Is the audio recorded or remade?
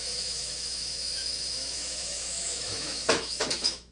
remade